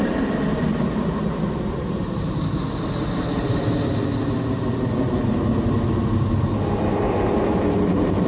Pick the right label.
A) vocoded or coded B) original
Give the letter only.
B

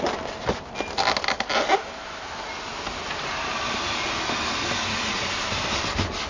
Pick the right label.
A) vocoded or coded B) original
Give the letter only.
B